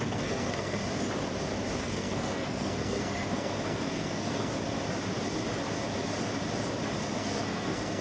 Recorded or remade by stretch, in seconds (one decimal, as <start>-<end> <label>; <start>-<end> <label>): 0.0-0.8 remade; 0.8-1.8 recorded; 1.8-4.5 remade; 4.5-7.0 recorded; 7.0-8.0 remade